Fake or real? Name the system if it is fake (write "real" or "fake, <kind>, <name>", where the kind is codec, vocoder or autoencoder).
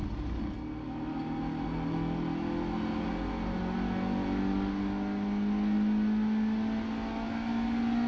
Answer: real